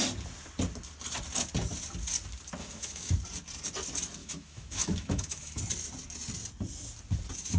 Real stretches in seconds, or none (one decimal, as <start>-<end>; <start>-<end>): 0.0-2.6; 3.1-4.2; 5.6-7.6